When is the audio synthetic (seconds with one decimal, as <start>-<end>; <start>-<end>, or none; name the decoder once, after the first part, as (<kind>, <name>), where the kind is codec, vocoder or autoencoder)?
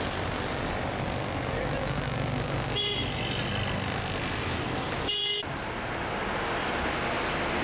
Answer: none